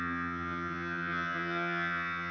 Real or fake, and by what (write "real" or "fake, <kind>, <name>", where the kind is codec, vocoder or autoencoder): fake, vocoder, HiFi-GAN